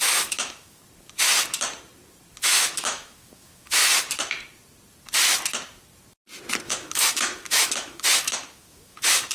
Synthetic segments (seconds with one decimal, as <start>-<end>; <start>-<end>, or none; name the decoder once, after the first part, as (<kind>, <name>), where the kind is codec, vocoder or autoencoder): 0.0-0.8 (autoencoder, DAC-VAE); 2.4-3.8; 6.6-9.3